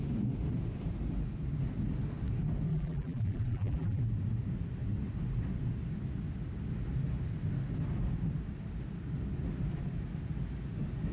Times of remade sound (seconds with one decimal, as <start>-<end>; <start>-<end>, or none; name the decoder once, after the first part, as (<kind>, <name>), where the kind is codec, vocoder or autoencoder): 2.7-4.0 (vocoder, BigVGAN v2)